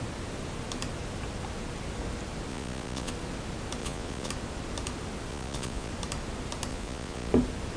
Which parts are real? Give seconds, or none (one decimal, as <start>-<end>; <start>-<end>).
0.0-2.5; 3.1-3.8; 4.3-5.3; 5.9-6.7; 7.3-7.8